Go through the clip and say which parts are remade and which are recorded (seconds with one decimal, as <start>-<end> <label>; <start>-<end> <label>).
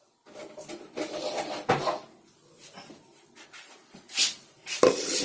0.0-5.2 recorded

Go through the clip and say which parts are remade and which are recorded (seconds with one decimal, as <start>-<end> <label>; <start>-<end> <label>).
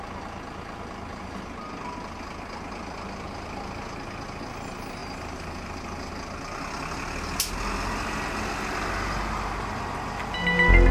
0.0-5.0 recorded; 5.0-6.1 remade; 6.1-10.9 recorded